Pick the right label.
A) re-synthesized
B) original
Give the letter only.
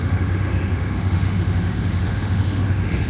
A